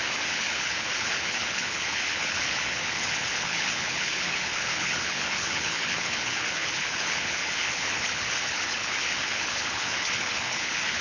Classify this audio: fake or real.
fake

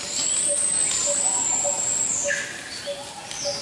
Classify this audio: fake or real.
real